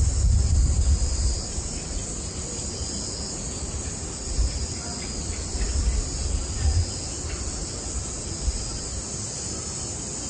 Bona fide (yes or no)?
yes